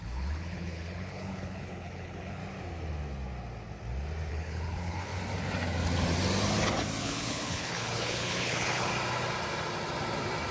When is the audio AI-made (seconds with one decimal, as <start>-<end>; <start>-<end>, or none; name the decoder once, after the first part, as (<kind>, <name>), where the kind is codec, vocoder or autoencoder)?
0.0-2.4 (codec, HILCodec); 4.3-5.1; 7.0-8.9